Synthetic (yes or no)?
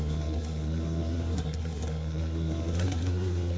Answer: yes